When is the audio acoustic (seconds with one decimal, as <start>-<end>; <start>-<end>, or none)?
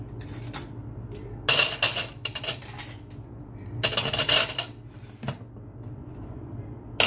0.0-6.0; 6.5-7.1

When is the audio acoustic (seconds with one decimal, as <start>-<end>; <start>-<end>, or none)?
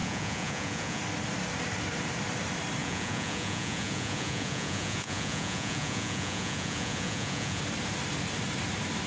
1.0-2.8; 7.6-9.1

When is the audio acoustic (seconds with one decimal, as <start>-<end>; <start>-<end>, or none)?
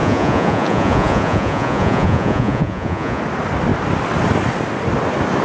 3.2-5.4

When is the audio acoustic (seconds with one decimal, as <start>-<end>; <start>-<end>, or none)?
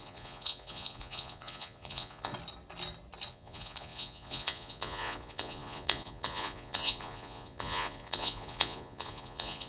2.3-3.3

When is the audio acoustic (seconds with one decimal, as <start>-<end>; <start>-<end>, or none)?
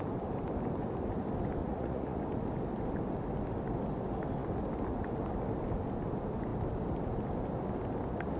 0.0-1.6; 2.2-8.4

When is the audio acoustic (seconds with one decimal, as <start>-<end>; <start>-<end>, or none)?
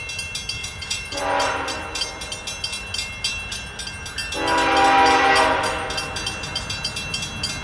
0.0-0.6; 1.2-7.6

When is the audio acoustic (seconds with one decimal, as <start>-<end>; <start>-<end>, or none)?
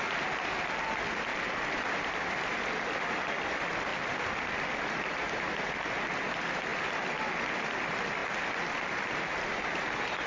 0.0-10.3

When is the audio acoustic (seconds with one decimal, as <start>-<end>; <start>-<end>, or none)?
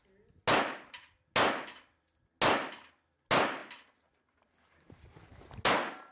0.0-6.1